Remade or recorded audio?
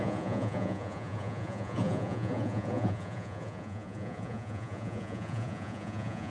remade